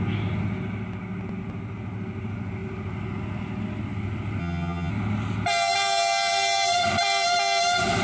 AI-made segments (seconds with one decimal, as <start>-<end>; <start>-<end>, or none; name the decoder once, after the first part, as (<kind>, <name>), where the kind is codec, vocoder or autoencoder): 4.4-4.9 (vocoder, HiFi-GAN)